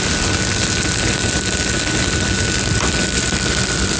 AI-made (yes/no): no